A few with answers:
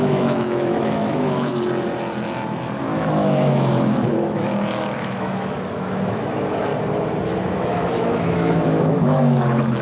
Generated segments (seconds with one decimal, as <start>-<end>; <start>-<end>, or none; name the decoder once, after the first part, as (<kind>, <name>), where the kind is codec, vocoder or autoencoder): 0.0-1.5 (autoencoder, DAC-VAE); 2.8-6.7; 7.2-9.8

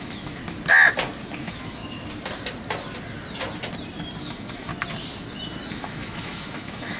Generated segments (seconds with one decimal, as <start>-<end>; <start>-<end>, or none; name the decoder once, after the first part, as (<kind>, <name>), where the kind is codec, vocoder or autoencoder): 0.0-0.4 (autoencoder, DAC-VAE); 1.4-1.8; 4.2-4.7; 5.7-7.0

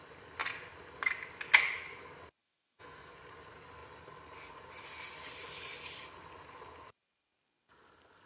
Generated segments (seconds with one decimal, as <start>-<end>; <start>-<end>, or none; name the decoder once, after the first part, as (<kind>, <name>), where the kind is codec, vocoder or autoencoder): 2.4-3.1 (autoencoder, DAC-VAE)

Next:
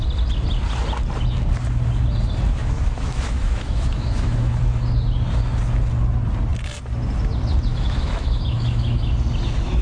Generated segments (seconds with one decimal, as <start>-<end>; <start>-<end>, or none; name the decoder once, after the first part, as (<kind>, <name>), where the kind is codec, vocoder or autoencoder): 2.6-4.6 (autoencoder, DAC-VAE); 7.7-9.1